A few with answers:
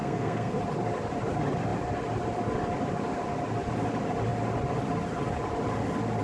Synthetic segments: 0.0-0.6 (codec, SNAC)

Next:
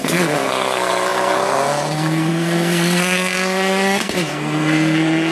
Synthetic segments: 0.0-5.3 (codec, SNAC)

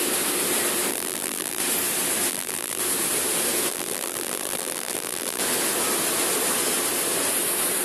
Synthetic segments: 0.9-1.6 (vocoder, BigVGAN v2); 2.3-2.8; 3.7-5.4

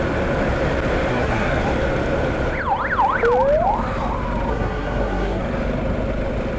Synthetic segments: 1.1-1.6 (codec, SNAC); 4.5-5.4

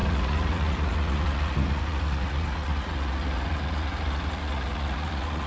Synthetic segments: 0.0-5.5 (vocoder, Vocos)

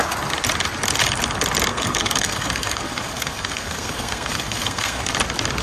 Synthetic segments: 1.7-5.1 (codec, SNAC)

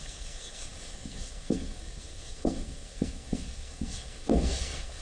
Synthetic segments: 0.0-5.0 (codec, SNAC)